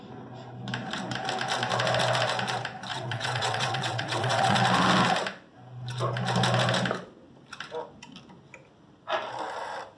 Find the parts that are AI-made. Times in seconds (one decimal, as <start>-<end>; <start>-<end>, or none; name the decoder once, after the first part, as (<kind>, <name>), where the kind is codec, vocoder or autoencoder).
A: 2.9-4.6 (vocoder, WaveNeXt)